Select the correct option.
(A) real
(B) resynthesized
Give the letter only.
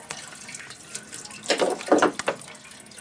A